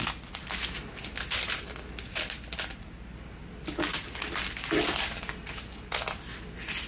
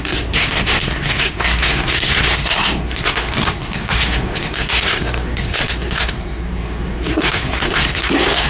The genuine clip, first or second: first